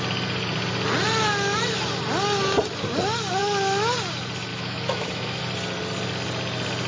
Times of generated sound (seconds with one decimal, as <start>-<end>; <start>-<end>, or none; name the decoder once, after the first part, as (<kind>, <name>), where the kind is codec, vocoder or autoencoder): 4.5-5.4 (autoencoder, DAC-VAE)